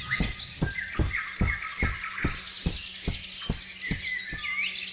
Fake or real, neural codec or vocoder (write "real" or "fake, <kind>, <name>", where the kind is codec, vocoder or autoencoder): real